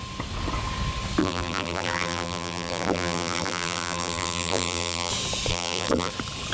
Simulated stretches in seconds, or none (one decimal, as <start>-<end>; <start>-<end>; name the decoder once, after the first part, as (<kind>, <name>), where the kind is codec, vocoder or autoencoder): 1.2-5.1 (vocoder, BigVGAN v2); 5.5-6.1